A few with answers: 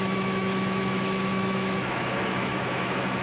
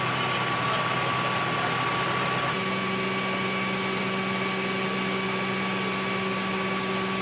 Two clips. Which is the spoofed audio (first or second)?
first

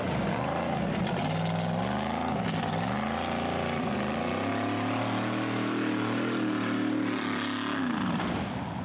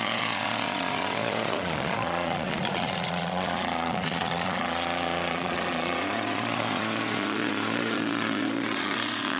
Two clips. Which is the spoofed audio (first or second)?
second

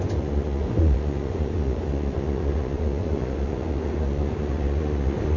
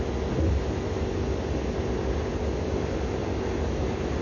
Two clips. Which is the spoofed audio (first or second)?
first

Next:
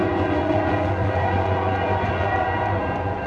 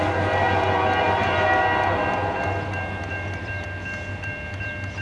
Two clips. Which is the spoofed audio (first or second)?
first